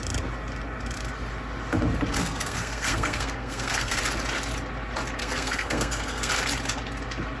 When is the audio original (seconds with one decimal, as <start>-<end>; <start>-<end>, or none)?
0.0-2.2; 4.0-5.2; 6.3-7.4